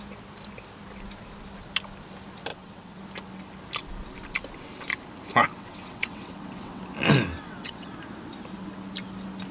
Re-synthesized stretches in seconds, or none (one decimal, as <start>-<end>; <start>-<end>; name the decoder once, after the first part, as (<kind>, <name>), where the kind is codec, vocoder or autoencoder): 2.5-3.0 (vocoder, WaveNeXt); 5.6-6.8; 7.3-7.9